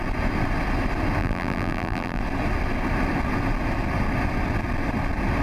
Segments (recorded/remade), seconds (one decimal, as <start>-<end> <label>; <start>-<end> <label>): 0.0-1.2 recorded; 1.2-2.2 remade; 2.2-5.4 recorded